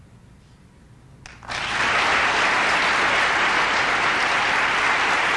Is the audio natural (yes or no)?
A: yes